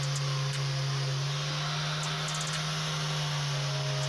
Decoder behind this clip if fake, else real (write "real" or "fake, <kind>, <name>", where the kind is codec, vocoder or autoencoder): real